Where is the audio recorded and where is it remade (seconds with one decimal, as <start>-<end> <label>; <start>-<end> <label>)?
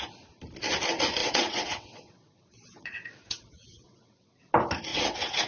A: 0.0-1.2 recorded; 1.2-4.5 remade; 4.5-4.9 recorded; 4.9-5.5 remade